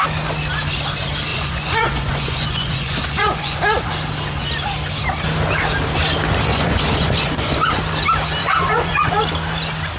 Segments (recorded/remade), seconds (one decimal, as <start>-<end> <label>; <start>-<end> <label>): 0.0-1.3 recorded; 1.3-3.6 remade; 3.6-6.5 recorded; 6.5-7.8 remade; 7.8-8.4 recorded; 8.4-9.1 remade; 9.1-10.0 recorded